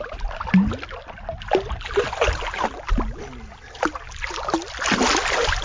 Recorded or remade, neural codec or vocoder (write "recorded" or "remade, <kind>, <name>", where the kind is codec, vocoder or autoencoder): recorded